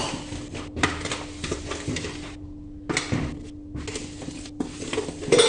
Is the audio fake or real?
real